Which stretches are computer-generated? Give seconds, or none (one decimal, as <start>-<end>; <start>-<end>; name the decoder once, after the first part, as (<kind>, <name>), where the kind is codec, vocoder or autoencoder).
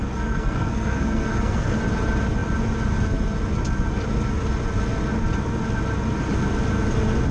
0.0-1.8 (codec, SNAC)